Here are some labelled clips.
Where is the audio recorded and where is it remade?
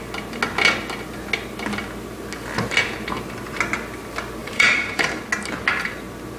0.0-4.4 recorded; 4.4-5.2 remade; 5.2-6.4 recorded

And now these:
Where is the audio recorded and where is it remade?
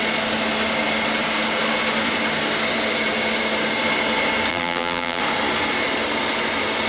0.0-4.5 recorded; 4.5-5.2 remade; 5.2-6.9 recorded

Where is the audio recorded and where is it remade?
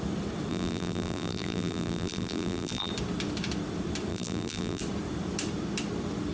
0.0-0.5 recorded; 0.5-2.9 remade; 2.9-4.1 recorded; 4.1-4.8 remade; 4.8-6.3 recorded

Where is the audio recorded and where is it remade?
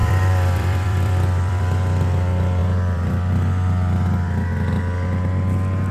0.0-1.6 remade; 1.6-2.6 recorded; 2.6-3.3 remade; 3.3-5.9 recorded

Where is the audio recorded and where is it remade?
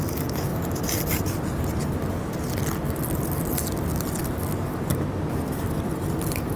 0.0-6.6 recorded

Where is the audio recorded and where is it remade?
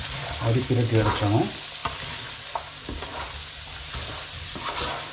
0.0-0.7 remade; 0.7-1.8 recorded; 1.8-4.5 remade; 4.5-5.1 recorded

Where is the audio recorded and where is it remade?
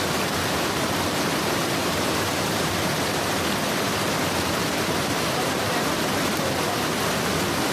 0.0-1.8 recorded; 1.8-2.7 remade; 2.7-4.6 recorded; 4.6-5.6 remade; 5.6-7.7 recorded